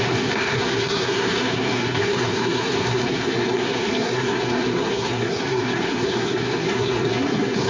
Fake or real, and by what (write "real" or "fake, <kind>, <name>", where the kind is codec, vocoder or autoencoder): fake, codec, SNAC